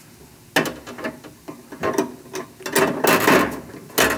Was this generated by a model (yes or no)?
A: no